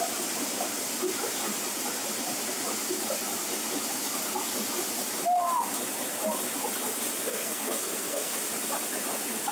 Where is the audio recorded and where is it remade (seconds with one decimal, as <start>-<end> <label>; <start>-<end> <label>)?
0.0-7.3 recorded; 7.3-8.4 remade; 8.4-9.5 recorded